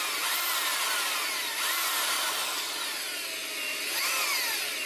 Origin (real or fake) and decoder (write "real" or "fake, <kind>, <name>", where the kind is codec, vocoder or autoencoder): real